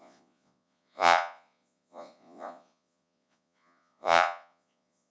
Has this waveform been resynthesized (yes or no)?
yes